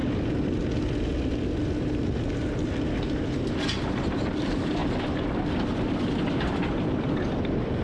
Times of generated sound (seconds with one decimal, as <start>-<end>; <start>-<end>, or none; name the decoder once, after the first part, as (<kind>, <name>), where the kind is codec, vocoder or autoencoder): 3.8-4.8 (vocoder, BigVGAN v2); 6.3-7.8